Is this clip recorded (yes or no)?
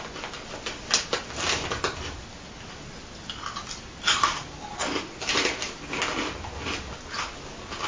yes